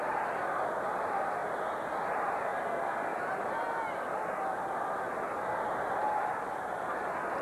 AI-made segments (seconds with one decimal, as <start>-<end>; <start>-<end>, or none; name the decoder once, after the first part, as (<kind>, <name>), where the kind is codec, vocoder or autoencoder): none